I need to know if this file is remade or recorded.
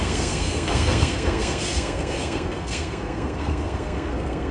remade